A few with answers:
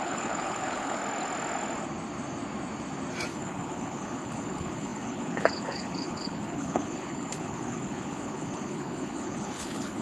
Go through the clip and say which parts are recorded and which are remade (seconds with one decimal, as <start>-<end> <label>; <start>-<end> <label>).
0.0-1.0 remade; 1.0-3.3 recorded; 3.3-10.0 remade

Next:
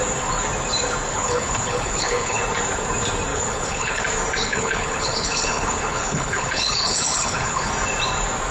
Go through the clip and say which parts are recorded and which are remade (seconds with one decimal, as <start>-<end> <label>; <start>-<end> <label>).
0.0-1.1 recorded; 1.1-2.4 remade; 2.4-3.3 recorded; 3.3-4.0 remade; 4.0-4.4 recorded; 4.4-7.7 remade; 7.7-8.5 recorded

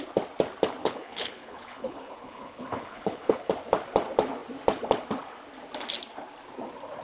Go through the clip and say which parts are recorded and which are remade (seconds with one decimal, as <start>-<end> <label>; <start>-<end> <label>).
0.0-0.8 recorded; 0.8-3.5 remade; 3.5-7.0 recorded